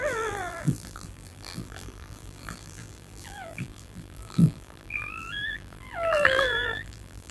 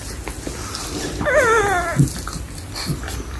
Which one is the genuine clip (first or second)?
second